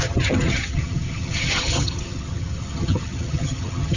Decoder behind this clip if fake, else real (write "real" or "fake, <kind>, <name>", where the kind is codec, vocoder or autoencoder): fake, vocoder, HiFi-GAN